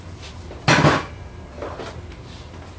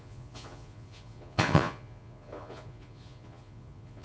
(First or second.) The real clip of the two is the first